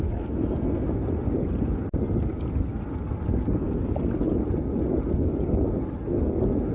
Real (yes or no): yes